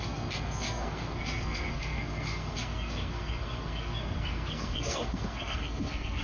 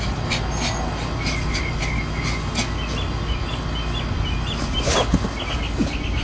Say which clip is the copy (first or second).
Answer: first